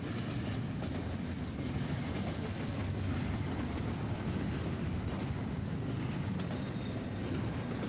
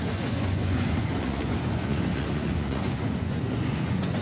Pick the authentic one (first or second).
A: first